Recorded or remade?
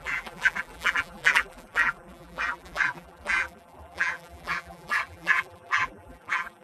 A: remade